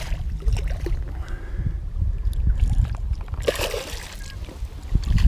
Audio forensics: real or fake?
real